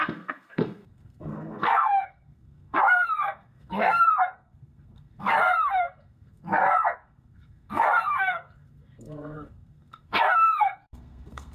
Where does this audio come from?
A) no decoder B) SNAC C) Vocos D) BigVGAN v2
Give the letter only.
B